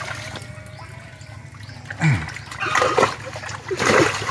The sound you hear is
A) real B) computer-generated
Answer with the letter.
A